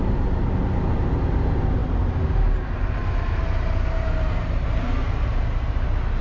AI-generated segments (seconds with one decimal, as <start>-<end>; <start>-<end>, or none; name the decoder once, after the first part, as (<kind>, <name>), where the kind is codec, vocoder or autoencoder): none

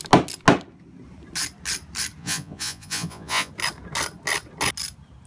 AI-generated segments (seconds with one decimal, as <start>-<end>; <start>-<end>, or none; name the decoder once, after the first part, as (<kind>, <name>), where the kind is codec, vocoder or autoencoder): 2.2-3.5 (vocoder, Vocos)

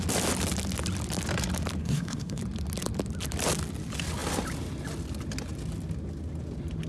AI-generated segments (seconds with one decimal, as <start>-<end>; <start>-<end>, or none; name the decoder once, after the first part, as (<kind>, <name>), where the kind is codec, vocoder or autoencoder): 1.8-2.4 (codec, SNAC)

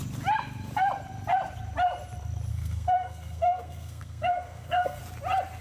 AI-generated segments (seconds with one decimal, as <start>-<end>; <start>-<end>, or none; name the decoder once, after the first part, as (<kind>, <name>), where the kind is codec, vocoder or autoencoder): 2.5-5.0 (codec, SNAC)

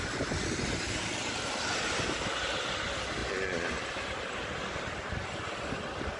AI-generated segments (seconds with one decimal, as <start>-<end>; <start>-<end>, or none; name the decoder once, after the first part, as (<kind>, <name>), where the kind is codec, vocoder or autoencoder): none

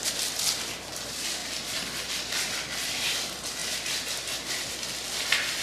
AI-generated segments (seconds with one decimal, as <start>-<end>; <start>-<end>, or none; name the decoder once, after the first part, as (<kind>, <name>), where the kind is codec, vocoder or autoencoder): none

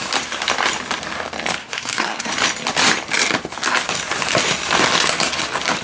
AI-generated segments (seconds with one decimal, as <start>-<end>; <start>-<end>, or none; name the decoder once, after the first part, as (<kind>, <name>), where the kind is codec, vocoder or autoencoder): 1.6-2.3 (codec, SNAC)